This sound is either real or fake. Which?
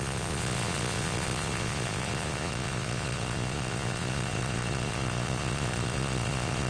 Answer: fake